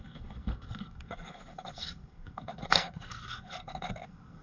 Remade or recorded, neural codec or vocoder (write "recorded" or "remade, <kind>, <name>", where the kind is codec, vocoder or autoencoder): remade, codec, SNAC